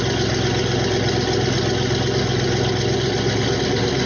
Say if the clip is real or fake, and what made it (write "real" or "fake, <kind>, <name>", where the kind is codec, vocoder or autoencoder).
real